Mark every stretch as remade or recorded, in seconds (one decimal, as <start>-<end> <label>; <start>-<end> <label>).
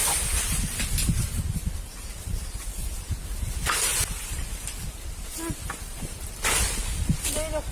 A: 0.0-7.7 recorded